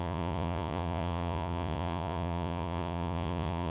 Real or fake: fake